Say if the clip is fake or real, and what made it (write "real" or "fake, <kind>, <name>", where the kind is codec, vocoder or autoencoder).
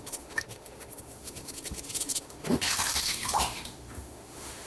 fake, autoencoder, DAC-VAE